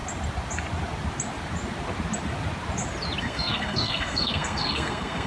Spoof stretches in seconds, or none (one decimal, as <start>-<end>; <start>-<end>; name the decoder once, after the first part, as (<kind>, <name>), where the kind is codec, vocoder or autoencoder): 3.2-5.3 (codec, SNAC)